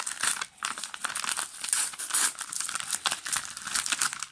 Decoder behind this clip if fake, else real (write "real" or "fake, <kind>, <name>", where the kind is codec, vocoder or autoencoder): real